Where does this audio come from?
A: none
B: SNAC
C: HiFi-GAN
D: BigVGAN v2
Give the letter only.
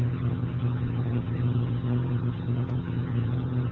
C